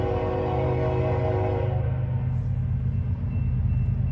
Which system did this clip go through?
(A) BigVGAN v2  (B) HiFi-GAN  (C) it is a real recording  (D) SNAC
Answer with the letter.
C